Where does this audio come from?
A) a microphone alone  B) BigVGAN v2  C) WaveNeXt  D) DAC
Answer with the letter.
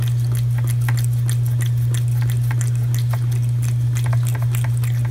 A